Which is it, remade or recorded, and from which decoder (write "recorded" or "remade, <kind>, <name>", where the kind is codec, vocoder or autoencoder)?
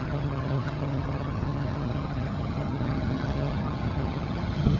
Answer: remade, vocoder, HiFi-GAN